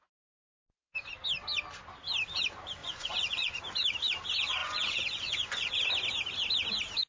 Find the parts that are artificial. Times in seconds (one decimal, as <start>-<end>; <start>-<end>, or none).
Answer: 2.8-3.6; 4.6-5.7